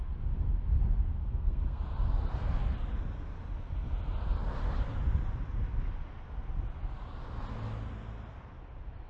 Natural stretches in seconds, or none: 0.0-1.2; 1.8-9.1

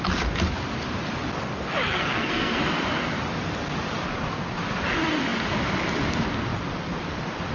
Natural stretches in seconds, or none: 0.0-1.9; 2.6-7.5